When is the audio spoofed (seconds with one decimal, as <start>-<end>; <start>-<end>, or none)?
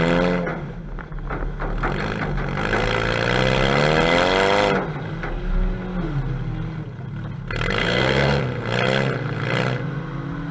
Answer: 7.8-8.4